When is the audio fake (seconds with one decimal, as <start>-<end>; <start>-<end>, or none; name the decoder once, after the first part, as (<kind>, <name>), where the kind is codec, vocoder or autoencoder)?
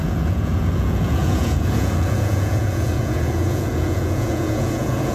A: 0.0-5.1 (vocoder, Vocos)